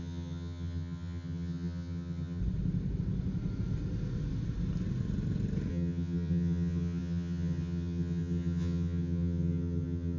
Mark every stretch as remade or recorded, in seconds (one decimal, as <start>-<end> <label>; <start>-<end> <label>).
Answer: 0.0-2.4 remade; 2.4-5.7 recorded; 5.7-10.2 remade